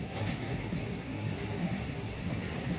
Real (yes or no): no